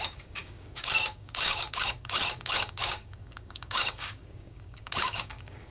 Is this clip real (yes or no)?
no